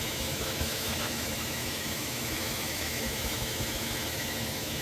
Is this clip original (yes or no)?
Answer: no